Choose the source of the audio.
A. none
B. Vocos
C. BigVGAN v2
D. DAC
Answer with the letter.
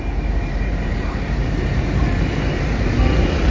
C